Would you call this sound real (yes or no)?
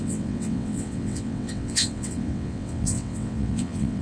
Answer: no